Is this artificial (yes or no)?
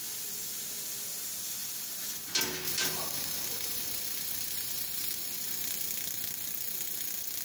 no